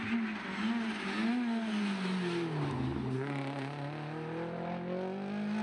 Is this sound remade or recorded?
recorded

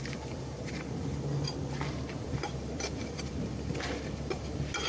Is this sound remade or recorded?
remade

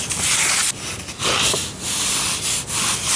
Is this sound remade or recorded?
recorded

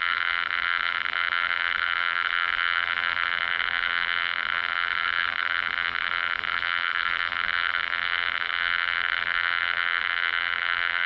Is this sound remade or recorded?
remade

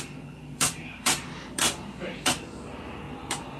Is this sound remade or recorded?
remade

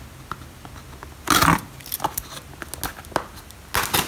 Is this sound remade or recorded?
recorded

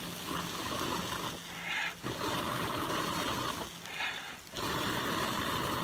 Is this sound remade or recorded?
recorded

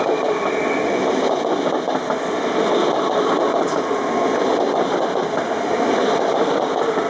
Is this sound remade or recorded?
recorded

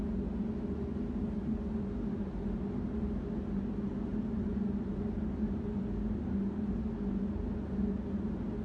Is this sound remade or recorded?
recorded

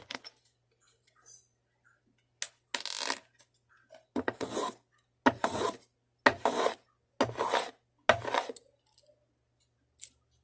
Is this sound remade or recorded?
recorded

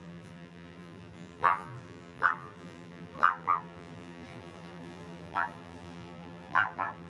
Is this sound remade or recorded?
remade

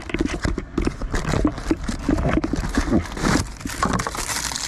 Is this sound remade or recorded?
recorded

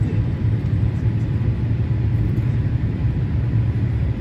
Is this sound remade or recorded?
remade